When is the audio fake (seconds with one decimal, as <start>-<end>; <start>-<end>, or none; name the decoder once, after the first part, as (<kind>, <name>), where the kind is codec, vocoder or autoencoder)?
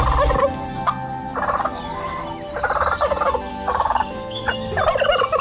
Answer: 3.5-4.4 (codec, DAC)